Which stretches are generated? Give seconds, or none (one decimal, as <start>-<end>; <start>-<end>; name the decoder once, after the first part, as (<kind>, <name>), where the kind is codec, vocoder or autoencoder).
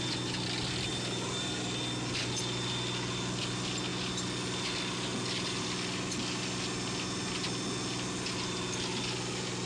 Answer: none